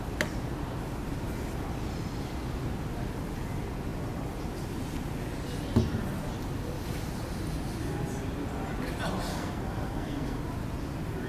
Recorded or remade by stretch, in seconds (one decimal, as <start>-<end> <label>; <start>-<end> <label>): 0.0-9.3 recorded; 9.3-10.4 remade; 10.4-11.3 recorded